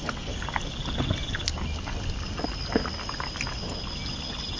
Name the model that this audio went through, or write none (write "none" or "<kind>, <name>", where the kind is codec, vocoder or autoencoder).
none